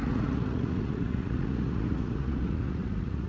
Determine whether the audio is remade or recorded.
remade